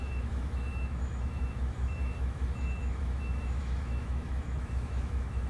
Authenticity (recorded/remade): remade